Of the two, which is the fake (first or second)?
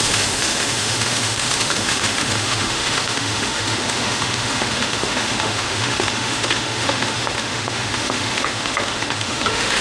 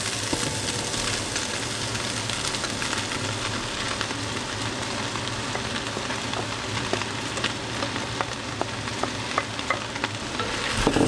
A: first